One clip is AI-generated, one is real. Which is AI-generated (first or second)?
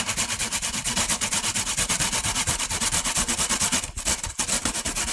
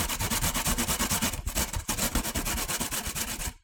first